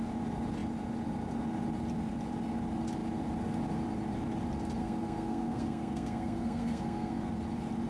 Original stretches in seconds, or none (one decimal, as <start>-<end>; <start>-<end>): 0.0-4.8; 7.3-7.9